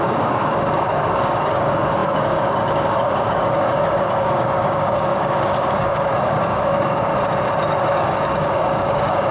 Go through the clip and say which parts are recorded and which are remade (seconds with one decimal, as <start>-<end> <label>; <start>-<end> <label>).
0.0-7.1 remade; 7.1-7.8 recorded; 7.8-9.3 remade